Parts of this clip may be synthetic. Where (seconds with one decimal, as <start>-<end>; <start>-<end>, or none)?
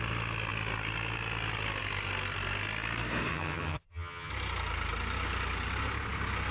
3.3-4.3